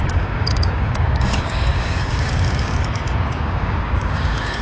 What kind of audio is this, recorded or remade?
remade